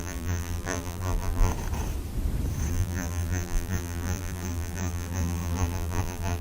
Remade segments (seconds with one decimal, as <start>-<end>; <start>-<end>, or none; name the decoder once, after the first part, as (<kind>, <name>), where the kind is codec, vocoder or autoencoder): 0.0-1.5 (vocoder, BigVGAN v2); 2.7-6.4